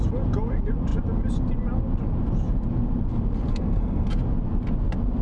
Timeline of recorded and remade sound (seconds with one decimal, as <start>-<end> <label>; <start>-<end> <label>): 0.0-3.5 recorded; 3.5-4.1 remade; 4.1-5.2 recorded

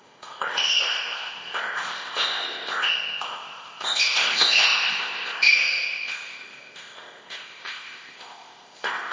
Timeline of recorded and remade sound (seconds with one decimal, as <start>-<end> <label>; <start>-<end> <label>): 0.0-9.1 remade